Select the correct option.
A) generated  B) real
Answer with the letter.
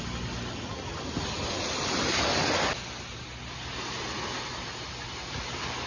B